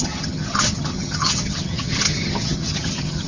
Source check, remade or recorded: remade